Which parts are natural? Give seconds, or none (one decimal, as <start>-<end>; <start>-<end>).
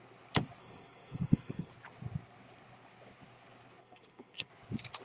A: 0.0-0.6; 1.7-3.8; 4.5-5.0